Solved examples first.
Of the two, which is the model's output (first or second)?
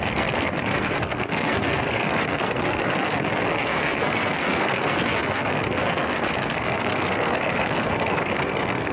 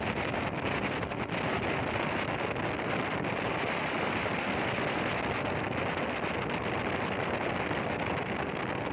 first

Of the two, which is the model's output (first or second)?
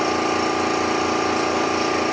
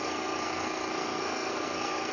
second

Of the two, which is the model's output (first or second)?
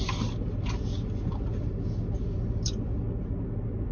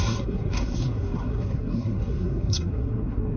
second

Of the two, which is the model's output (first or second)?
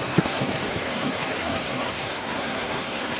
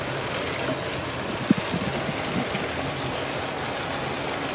first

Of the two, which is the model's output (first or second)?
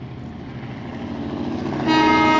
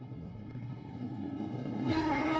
second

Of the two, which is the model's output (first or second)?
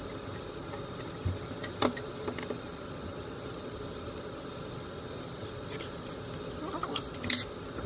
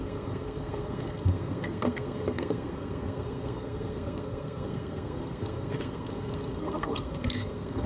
second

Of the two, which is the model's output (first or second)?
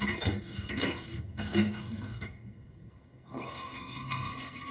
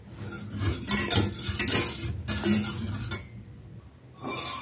first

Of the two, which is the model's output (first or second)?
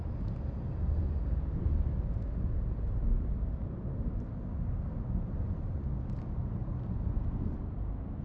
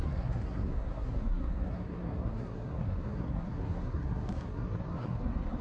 second